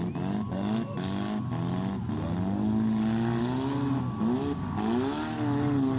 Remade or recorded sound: recorded